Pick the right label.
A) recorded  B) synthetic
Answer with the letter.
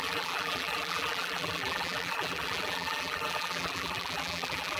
B